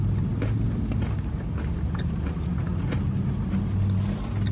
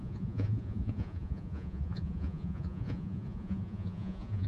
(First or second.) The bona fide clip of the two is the first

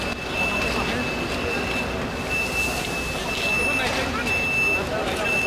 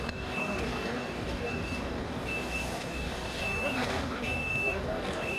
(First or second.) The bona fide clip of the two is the first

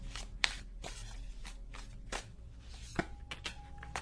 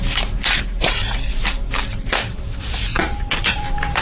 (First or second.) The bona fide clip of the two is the first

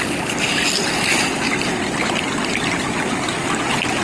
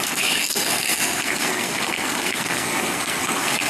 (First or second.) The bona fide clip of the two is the first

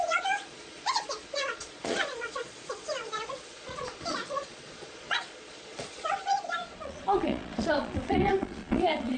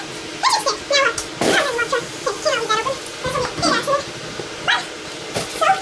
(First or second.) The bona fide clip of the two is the second